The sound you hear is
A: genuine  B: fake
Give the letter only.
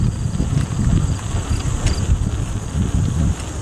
A